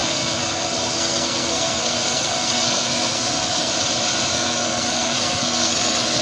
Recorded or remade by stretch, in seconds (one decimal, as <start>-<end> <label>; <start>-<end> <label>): 0.0-3.7 remade; 3.7-4.3 recorded; 4.3-6.2 remade